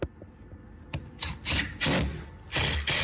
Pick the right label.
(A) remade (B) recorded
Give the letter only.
B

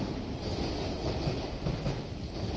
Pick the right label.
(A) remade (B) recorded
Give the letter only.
B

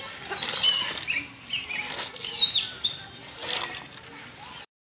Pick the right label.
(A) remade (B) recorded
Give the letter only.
B